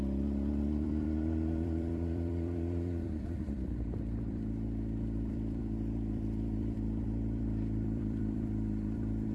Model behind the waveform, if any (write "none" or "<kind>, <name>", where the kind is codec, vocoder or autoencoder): vocoder, BigVGAN v2